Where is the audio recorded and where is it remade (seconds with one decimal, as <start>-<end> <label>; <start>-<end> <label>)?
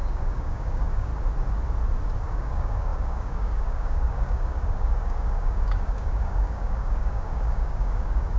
0.0-1.1 remade; 1.1-2.2 recorded; 2.2-8.4 remade